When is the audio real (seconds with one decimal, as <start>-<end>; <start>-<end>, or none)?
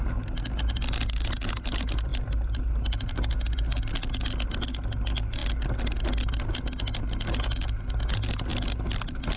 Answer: 0.0-9.4